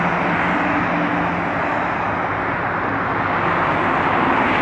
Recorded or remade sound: recorded